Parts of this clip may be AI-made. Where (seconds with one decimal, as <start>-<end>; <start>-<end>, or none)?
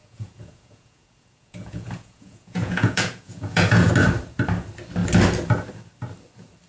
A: 0.0-3.9